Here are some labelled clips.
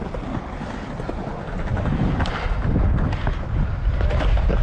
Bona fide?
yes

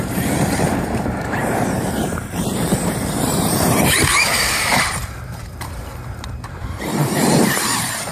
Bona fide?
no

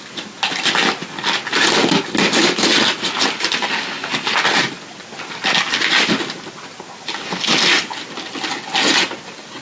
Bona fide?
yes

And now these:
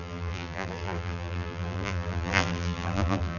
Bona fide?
no